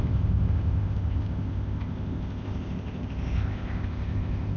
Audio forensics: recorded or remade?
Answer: remade